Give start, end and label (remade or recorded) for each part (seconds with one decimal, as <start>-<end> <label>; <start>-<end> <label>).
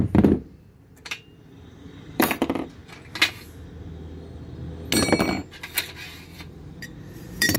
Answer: 0.0-2.8 remade; 2.8-5.8 recorded; 5.8-7.6 remade